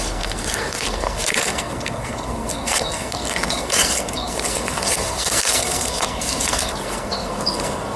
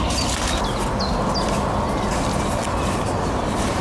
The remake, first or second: first